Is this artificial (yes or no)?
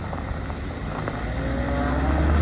no